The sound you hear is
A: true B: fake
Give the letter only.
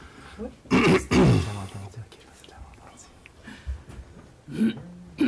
A